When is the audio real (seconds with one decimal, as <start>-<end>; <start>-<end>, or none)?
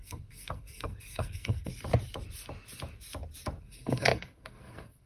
1.7-3.6